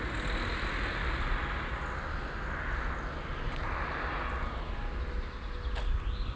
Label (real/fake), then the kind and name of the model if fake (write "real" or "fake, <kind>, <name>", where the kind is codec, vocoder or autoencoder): real